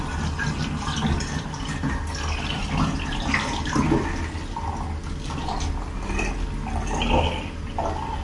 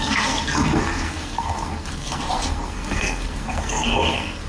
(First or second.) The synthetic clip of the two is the second